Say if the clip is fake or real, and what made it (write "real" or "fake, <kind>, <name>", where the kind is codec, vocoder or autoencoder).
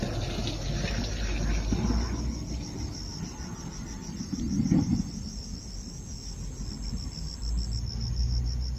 real